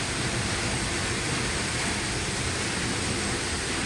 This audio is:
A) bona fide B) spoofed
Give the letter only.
A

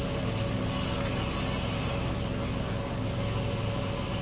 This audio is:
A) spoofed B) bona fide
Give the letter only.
B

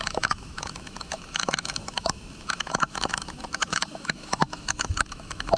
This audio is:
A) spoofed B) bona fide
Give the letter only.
A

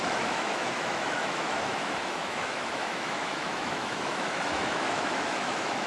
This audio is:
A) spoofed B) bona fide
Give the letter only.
A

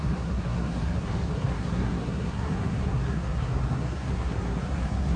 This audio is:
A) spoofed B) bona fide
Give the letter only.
A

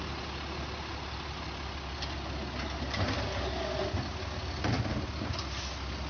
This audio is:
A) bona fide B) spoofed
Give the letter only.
A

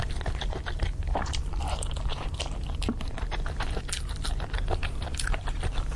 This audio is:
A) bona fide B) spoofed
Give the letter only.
B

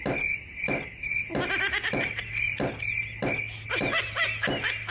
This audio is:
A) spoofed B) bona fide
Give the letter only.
B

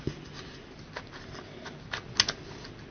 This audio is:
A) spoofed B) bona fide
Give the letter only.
B